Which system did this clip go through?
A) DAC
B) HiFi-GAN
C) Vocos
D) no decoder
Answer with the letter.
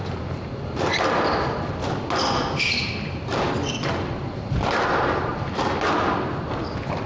D